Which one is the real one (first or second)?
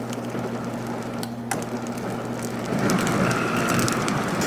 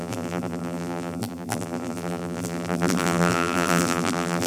first